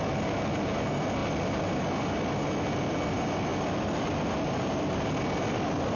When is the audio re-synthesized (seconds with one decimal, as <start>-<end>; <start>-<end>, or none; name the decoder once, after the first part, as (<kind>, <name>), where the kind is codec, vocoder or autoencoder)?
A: none